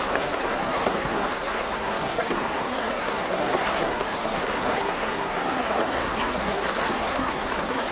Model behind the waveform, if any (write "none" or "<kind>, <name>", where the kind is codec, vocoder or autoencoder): codec, SNAC